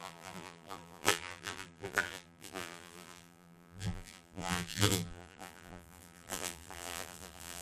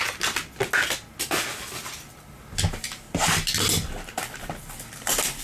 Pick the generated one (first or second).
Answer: first